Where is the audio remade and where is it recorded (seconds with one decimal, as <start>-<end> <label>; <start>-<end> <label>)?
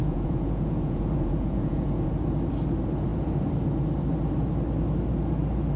0.0-2.1 remade; 2.1-5.8 recorded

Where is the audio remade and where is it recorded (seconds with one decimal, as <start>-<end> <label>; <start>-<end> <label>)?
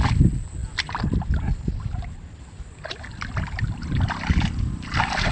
0.0-5.3 recorded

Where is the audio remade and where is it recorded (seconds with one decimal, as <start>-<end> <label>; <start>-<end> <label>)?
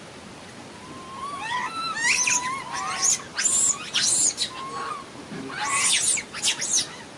0.0-7.2 recorded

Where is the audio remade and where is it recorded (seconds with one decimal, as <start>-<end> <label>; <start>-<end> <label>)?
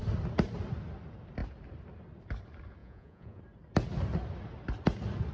0.0-2.8 recorded; 2.8-3.4 remade; 3.4-5.3 recorded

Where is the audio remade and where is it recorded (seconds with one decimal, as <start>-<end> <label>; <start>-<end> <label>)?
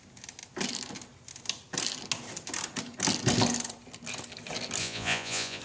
0.0-4.8 recorded; 4.8-5.6 remade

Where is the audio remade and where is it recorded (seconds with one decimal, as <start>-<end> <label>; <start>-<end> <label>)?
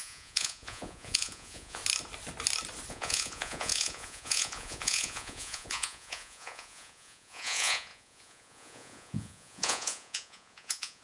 0.0-1.8 remade; 1.8-2.9 recorded; 2.9-11.0 remade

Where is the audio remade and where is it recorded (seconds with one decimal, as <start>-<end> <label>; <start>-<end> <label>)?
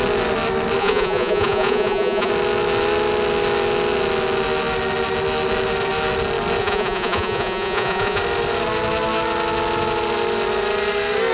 0.0-0.8 recorded; 0.8-2.3 remade; 2.3-6.6 recorded; 6.6-8.2 remade; 8.2-11.3 recorded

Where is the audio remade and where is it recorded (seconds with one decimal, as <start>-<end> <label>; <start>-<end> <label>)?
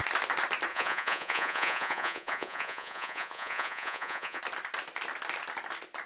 0.0-0.7 recorded; 0.7-4.4 remade; 4.4-6.1 recorded